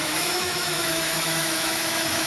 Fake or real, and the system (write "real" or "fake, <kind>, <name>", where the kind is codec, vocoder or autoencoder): fake, autoencoder, DAC-VAE